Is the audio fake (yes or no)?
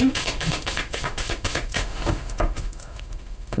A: yes